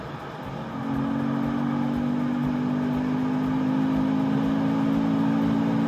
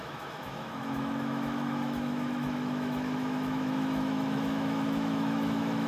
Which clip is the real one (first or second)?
first